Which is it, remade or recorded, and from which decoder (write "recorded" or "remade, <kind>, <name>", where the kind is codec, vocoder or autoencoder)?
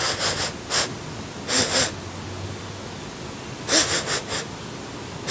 recorded